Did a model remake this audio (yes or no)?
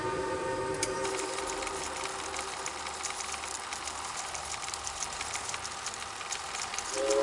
no